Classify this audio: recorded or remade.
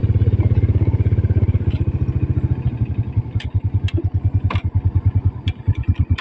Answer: recorded